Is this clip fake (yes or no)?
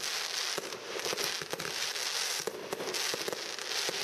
no